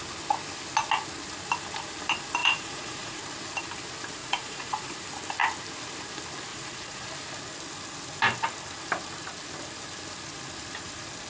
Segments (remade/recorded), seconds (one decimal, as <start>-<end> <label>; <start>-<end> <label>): 0.0-2.4 recorded; 2.4-3.2 remade; 3.2-4.2 recorded; 4.2-5.0 remade; 5.0-6.5 recorded; 6.5-7.1 remade; 7.1-11.3 recorded